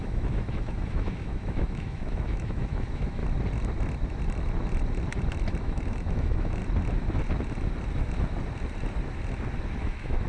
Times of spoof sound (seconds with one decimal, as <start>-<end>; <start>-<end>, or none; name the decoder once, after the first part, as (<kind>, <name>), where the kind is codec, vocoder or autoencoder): 0.0-3.2 (autoencoder, DAC-VAE); 5.6-6.6; 9.8-10.3